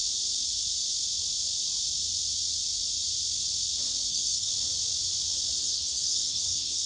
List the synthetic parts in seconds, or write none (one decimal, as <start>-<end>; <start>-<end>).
4.1-4.5; 5.6-6.9